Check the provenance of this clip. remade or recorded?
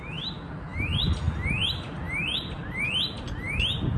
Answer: recorded